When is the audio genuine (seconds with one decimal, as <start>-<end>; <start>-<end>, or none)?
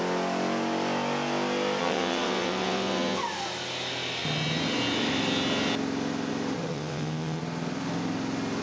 0.0-1.8; 3.2-6.7; 7.4-8.6